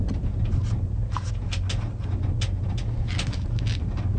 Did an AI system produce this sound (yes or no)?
no